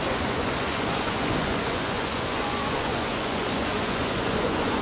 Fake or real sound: fake